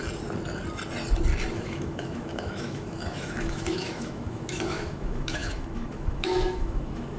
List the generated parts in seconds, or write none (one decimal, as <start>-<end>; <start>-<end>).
1.5-7.2